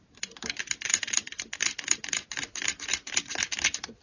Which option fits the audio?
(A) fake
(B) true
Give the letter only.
B